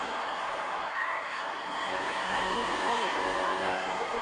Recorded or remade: remade